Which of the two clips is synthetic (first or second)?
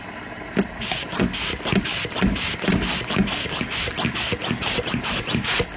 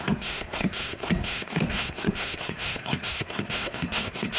second